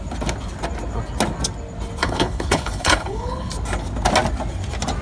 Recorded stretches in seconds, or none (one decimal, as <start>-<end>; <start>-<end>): 0.0-2.0; 3.5-5.0